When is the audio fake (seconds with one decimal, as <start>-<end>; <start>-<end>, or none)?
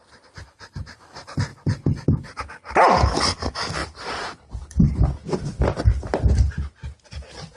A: 1.5-2.4; 3.8-4.9